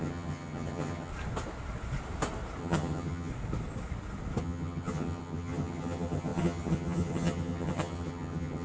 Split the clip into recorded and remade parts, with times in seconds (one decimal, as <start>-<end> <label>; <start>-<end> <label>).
0.0-1.1 remade; 1.1-2.6 recorded; 2.6-3.3 remade; 3.3-4.4 recorded; 4.4-8.6 remade